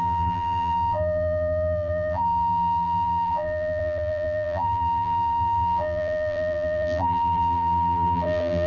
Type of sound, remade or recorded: remade